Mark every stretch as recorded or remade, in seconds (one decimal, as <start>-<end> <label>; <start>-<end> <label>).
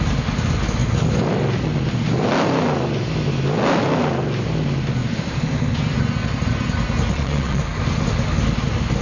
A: 0.0-7.1 recorded; 7.1-7.6 remade; 7.6-9.0 recorded